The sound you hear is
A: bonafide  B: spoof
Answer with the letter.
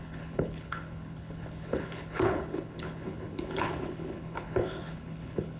B